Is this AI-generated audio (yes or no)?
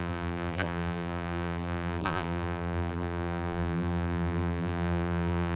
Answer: yes